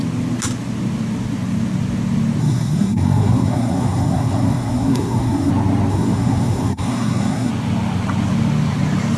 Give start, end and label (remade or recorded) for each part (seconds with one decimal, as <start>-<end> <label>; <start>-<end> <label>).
0.0-2.4 recorded; 2.4-5.5 remade; 5.5-5.9 recorded; 5.9-7.5 remade; 7.5-9.2 recorded

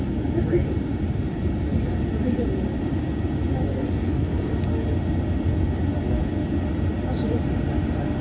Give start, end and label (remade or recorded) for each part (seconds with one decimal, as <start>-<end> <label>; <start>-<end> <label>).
0.0-3.7 recorded; 3.7-4.5 remade; 4.5-8.2 recorded

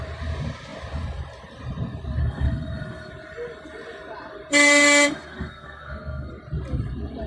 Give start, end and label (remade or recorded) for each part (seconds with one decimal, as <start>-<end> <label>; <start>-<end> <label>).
0.0-2.2 recorded; 2.2-3.1 remade; 3.1-4.5 recorded; 4.5-6.3 remade; 6.3-7.3 recorded

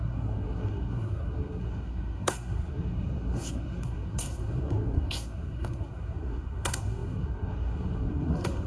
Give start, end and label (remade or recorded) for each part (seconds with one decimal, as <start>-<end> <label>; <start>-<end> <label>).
0.0-8.7 remade

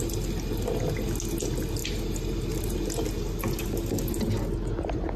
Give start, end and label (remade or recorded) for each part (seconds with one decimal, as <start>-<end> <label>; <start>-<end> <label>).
0.0-5.2 recorded

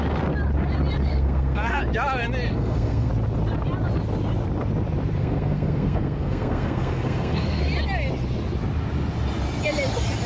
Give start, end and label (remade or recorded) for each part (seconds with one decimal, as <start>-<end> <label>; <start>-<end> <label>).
0.0-1.1 recorded; 1.1-1.8 remade; 1.8-2.5 recorded; 2.5-3.1 remade; 3.1-5.2 recorded; 5.2-7.6 remade; 7.6-10.3 recorded